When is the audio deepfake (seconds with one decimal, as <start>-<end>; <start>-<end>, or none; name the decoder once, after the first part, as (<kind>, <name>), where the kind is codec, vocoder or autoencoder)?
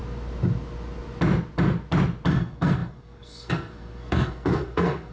2.3-5.1 (codec, SNAC)